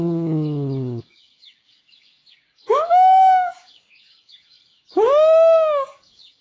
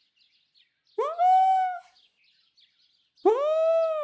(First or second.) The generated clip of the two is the first